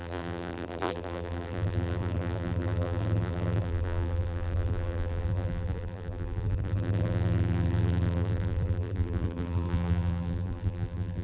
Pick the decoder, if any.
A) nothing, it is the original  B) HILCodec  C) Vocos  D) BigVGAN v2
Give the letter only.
D